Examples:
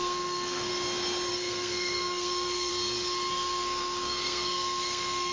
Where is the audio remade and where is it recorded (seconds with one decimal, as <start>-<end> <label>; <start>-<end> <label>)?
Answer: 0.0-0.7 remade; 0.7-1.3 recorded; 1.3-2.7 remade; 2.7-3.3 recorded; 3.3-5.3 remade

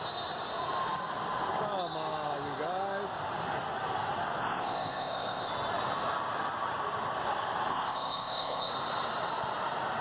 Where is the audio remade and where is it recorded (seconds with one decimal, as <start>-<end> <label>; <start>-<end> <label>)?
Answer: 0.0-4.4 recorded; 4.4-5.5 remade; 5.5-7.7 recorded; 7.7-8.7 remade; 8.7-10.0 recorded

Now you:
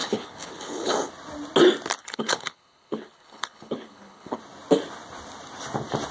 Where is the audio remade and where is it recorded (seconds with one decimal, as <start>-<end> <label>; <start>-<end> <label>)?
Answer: 0.0-1.1 remade; 1.1-2.0 recorded; 2.0-4.4 remade; 4.4-6.1 recorded

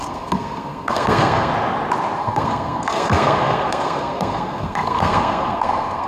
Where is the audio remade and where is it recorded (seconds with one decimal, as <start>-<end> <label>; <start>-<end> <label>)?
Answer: 0.0-1.5 remade; 1.5-2.2 recorded; 2.2-6.1 remade

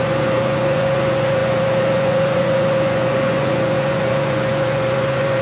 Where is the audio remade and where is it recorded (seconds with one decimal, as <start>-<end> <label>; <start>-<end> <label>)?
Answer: 0.0-5.4 remade

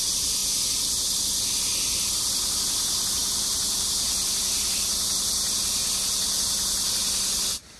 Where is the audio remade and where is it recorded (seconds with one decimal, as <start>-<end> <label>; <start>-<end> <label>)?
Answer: 0.0-0.4 remade; 0.4-2.1 recorded; 2.1-5.8 remade; 5.8-7.8 recorded

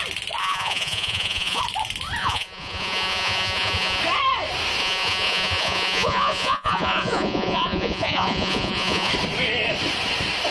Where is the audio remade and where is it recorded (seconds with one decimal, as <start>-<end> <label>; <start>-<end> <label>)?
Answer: 0.0-0.4 recorded; 0.4-1.6 remade; 1.6-2.2 recorded; 2.2-4.0 remade; 4.0-4.8 recorded; 4.8-9.1 remade; 9.1-10.5 recorded